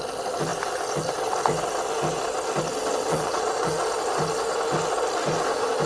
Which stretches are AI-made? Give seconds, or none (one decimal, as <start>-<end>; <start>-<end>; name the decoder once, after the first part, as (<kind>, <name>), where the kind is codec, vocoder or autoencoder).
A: 3.1-3.7 (vocoder, Vocos)